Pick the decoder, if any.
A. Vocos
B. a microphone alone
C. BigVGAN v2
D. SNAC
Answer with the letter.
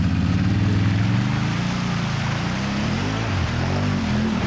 B